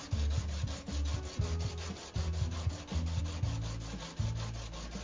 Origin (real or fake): real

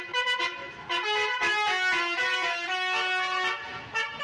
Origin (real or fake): real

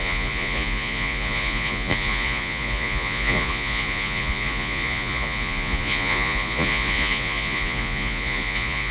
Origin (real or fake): fake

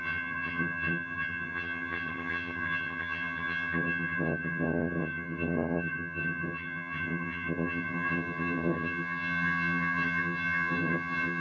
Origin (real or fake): fake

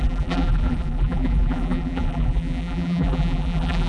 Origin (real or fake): fake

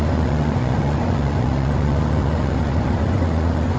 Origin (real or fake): fake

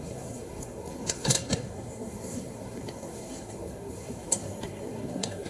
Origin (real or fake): fake